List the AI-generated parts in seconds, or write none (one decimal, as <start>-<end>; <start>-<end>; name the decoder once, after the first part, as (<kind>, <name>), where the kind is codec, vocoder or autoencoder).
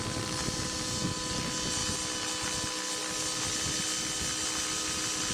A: none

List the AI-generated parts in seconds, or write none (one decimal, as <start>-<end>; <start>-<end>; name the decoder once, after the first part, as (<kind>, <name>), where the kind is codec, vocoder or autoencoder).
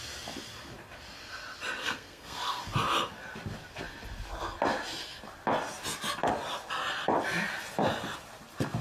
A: 1.8-2.6 (codec, SNAC)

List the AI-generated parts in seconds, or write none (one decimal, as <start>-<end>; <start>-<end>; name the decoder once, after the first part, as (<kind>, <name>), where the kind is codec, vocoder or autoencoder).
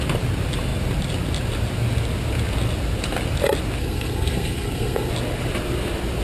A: 3.8-5.1 (codec, SNAC)